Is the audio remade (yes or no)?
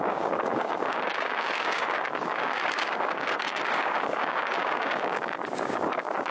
yes